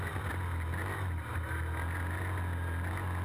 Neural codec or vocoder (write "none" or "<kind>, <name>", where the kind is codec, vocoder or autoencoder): none